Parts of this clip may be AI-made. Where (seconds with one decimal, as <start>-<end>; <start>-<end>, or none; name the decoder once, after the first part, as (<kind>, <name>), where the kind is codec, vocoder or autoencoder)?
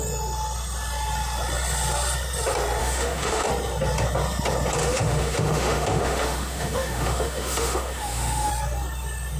2.8-3.5 (autoencoder, DAC-VAE); 4.8-8.5